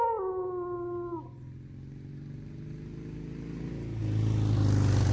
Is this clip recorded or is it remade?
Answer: recorded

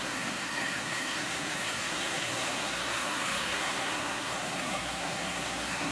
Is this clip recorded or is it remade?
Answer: remade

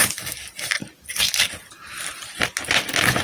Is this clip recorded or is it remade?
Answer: recorded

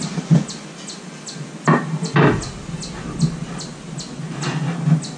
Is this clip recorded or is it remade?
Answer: recorded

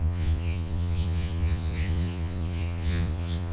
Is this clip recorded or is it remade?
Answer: remade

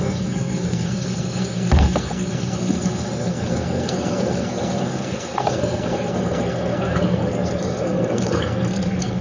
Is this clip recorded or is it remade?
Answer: remade